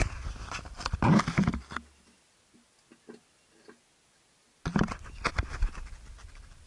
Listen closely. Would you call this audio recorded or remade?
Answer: recorded